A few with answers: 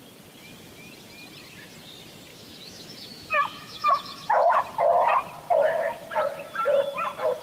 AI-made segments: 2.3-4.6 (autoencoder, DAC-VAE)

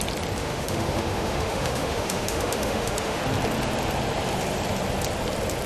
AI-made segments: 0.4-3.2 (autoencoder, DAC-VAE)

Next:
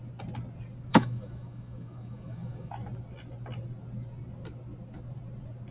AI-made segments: 0.9-2.7 (autoencoder, DAC-VAE)

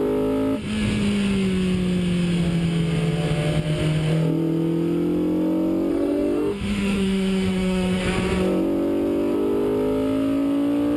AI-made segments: 5.9-8.0 (autoencoder, DAC-VAE)

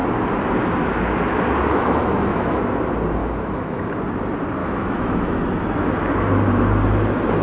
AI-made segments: 1.7-2.6 (autoencoder, DAC-VAE); 3.2-3.8; 4.6-5.4

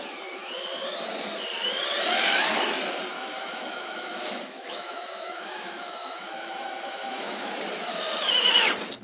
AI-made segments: 3.1-7.5 (autoencoder, DAC-VAE)